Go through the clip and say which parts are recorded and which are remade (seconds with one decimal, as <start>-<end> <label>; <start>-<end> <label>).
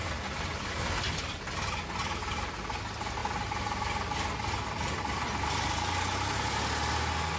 0.0-7.4 recorded